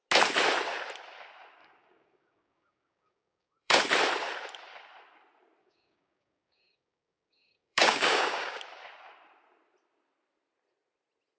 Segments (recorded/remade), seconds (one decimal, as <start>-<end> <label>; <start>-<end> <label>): 0.0-1.6 recorded; 1.6-3.8 remade; 3.8-5.6 recorded; 5.6-8.6 remade; 8.6-11.4 recorded